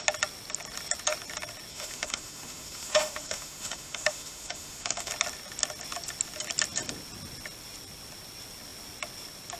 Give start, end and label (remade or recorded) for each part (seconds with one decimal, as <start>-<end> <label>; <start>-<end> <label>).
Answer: 0.0-1.7 recorded; 1.7-5.1 remade; 5.1-9.6 recorded